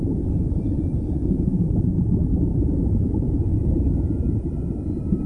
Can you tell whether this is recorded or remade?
remade